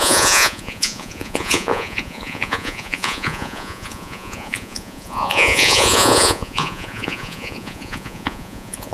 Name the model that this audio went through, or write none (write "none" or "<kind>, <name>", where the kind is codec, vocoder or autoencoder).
vocoder, Vocos